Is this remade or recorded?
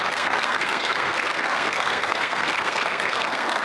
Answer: remade